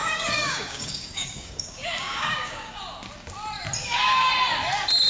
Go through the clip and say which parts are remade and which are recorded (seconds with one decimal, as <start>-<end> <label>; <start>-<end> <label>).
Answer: 0.0-2.8 remade; 2.8-3.8 recorded; 3.8-4.3 remade; 4.3-5.1 recorded